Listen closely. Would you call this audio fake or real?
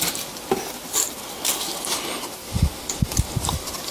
real